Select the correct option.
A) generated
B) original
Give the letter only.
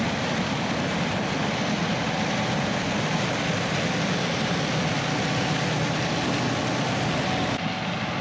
B